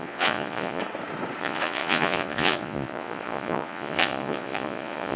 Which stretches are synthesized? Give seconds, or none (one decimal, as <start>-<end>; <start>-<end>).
0.0-0.8; 1.4-5.2